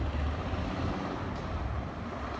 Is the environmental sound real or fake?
real